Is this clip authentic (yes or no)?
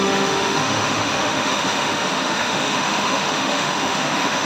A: no